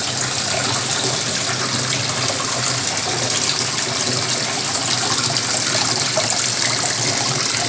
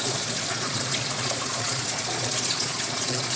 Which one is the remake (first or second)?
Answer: second